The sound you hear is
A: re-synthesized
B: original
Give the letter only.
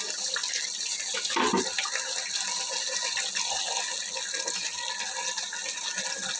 B